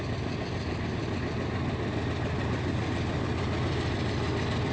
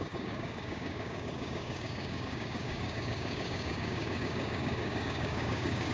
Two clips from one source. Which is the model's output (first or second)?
second